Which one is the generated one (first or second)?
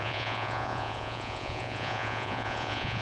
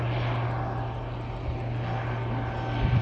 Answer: first